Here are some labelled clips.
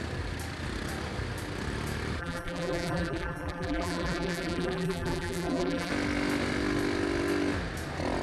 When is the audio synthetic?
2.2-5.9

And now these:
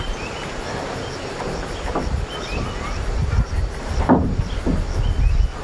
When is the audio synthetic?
3.2-3.8

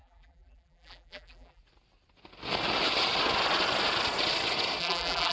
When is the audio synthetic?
0.0-1.6; 4.8-5.3

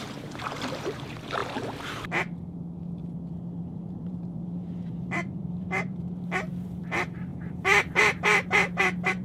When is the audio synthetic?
0.0-1.4; 3.6-9.2

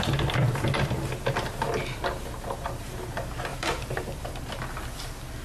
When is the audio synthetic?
3.5-4.4

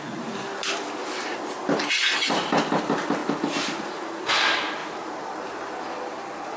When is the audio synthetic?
4.8-5.7